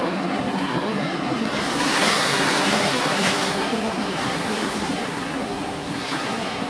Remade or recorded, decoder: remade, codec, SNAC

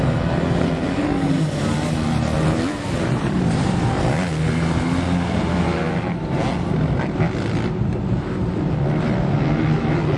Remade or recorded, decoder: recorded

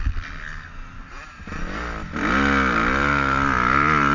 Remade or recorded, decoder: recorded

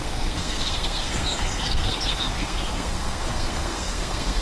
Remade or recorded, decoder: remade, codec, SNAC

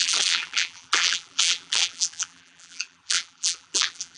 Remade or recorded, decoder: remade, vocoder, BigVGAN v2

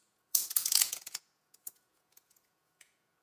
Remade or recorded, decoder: remade, vocoder, Vocos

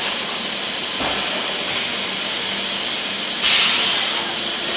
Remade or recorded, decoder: recorded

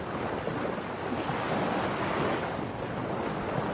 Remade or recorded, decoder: recorded